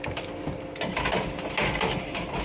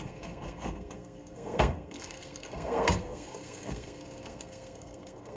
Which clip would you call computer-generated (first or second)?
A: second